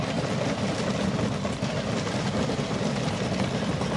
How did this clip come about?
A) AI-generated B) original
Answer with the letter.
B